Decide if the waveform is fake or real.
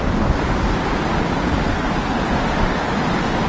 real